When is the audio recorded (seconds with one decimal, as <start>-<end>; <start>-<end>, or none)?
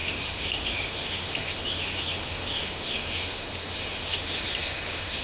none